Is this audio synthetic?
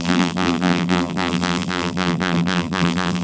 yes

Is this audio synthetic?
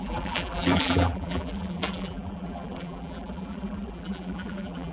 yes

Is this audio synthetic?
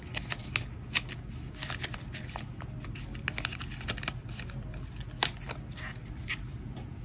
no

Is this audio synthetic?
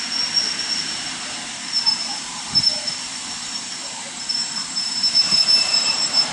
yes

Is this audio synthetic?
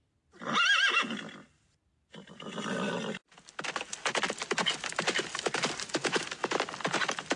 no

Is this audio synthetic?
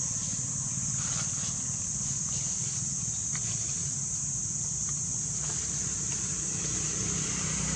no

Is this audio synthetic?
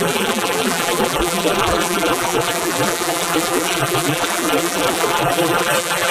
yes